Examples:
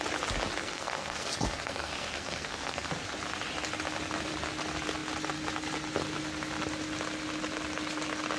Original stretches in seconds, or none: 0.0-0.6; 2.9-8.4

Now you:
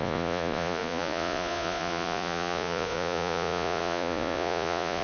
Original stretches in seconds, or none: none

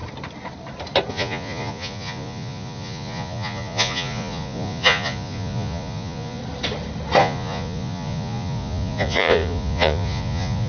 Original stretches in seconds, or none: 0.0-1.1; 6.4-7.2

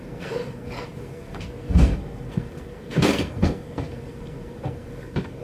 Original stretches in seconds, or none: none

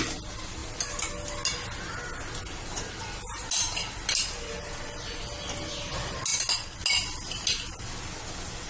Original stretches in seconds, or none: 0.0-8.7